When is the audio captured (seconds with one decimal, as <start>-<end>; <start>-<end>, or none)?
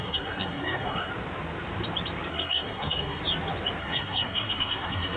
1.1-2.3; 3.2-3.8